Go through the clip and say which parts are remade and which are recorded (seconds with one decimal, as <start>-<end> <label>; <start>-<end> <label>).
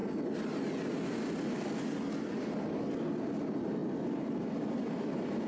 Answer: 0.0-3.8 recorded; 3.8-5.1 remade; 5.1-5.5 recorded